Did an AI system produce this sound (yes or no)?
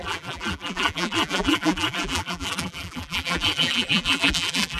yes